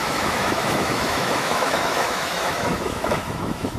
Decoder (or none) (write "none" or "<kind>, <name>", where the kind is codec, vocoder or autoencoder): autoencoder, DAC-VAE